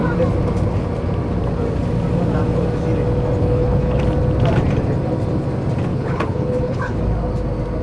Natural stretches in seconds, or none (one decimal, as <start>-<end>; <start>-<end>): 0.0-3.4; 4.0-5.9; 7.0-7.8

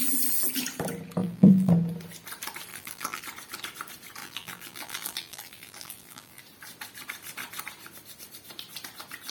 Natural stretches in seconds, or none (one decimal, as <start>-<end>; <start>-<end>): 0.0-1.2; 1.7-2.7; 3.2-4.2; 6.4-9.3

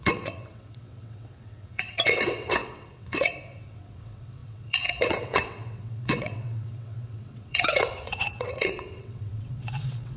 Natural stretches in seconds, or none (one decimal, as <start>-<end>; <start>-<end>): none

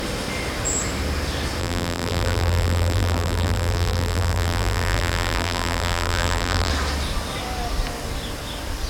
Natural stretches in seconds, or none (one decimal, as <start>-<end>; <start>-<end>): 0.0-1.6; 6.7-8.9

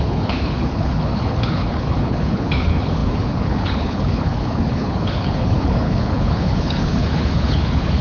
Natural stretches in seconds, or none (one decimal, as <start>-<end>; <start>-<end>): none

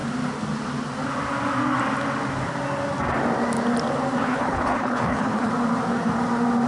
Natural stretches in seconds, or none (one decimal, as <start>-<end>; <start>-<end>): 0.0-4.2; 5.5-6.7

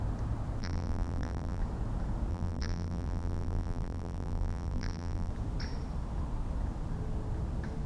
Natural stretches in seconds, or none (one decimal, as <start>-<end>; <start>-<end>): 0.0-0.6; 1.6-2.3; 5.3-7.9

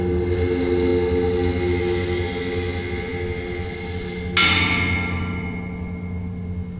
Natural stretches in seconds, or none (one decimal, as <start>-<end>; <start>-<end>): 0.0-6.8